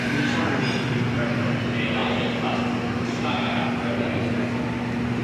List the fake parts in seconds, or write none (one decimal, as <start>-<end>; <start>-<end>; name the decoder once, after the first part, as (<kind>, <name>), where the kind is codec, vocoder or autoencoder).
none